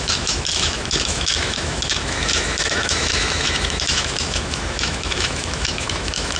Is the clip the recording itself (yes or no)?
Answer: no